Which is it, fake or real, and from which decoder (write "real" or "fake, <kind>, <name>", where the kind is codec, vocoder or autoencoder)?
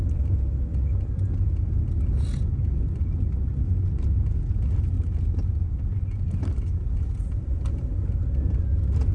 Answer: real